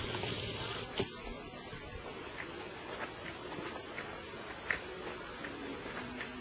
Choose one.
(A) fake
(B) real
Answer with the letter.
B